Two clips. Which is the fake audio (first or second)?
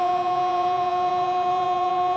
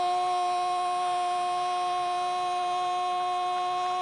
first